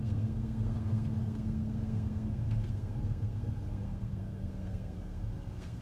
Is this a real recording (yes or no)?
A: no